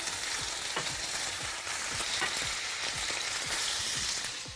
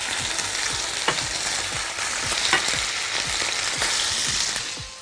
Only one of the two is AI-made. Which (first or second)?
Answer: first